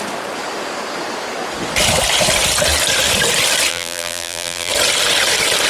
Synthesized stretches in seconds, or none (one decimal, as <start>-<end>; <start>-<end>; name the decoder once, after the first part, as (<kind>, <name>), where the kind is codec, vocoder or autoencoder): 3.7-4.7 (vocoder, BigVGAN v2)